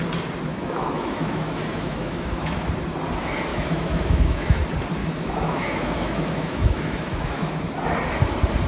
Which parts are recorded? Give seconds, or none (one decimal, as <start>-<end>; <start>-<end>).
0.0-0.5; 2.7-3.5; 4.6-5.0; 7.6-8.7